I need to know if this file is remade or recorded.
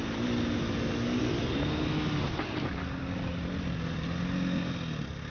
recorded